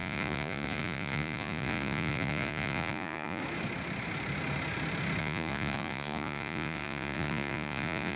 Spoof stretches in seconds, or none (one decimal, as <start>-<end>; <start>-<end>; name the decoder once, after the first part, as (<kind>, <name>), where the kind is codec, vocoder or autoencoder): 0.0-3.4 (vocoder, Vocos); 5.2-8.2